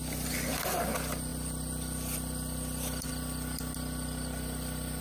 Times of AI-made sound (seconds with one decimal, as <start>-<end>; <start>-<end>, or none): none

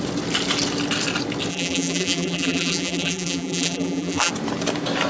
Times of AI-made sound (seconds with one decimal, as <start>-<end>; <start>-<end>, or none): 1.5-4.3

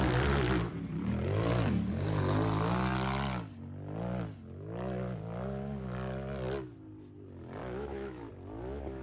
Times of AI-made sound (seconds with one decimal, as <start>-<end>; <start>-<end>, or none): 7.6-8.3

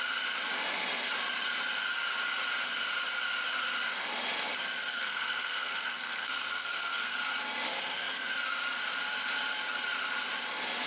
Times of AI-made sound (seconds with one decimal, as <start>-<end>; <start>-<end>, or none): 4.9-7.2; 7.7-8.3

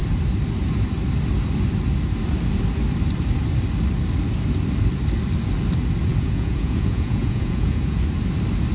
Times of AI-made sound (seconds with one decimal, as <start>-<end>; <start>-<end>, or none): 6.1-8.0

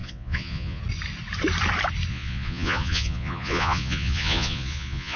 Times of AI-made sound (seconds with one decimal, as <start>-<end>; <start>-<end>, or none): 0.0-0.8; 2.1-5.2